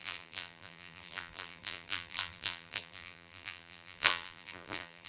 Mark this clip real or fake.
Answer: fake